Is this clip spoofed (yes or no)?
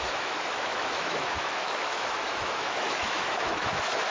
yes